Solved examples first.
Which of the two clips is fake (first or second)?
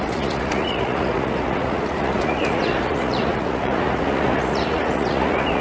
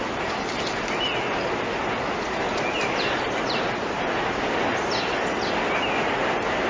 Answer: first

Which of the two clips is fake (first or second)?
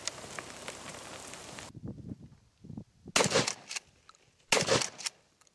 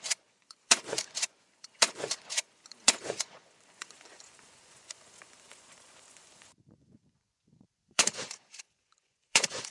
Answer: second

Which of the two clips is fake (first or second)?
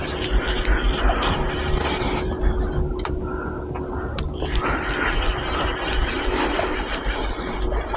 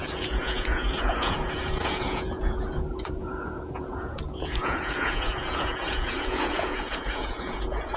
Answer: second